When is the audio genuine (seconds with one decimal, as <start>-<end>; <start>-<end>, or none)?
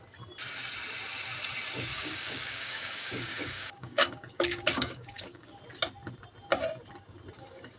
0.0-1.9; 5.6-7.8